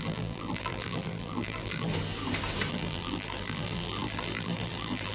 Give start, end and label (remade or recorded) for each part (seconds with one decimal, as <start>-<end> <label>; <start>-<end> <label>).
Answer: 0.0-1.9 remade; 1.9-2.7 recorded; 2.7-5.1 remade